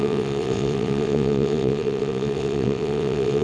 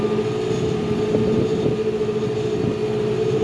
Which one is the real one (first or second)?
second